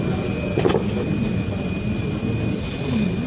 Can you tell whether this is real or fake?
real